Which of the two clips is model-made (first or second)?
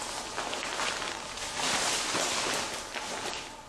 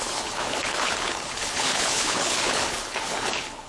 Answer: second